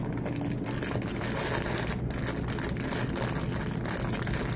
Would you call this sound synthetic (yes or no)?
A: no